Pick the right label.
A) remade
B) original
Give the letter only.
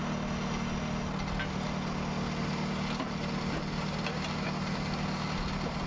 B